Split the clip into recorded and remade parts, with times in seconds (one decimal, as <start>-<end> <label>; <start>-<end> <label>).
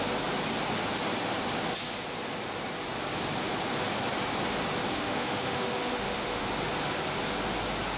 0.0-4.9 recorded; 4.9-6.5 remade; 6.5-8.0 recorded